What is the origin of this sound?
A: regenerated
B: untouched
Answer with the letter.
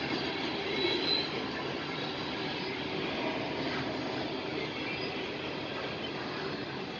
B